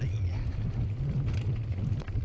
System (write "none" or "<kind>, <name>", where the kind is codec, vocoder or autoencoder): none